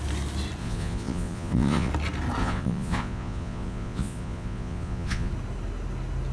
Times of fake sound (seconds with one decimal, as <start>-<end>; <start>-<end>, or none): 0.6-1.9; 2.4-5.3